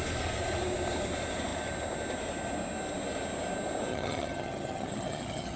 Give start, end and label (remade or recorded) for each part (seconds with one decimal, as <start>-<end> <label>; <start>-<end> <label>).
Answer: 0.0-3.9 recorded; 3.9-5.6 remade